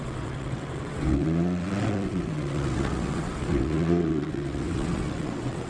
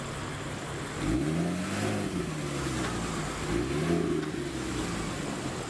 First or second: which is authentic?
second